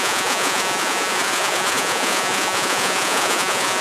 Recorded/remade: remade